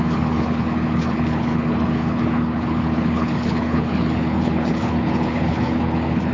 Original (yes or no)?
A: no